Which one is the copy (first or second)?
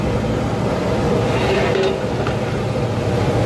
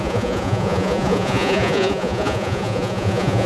second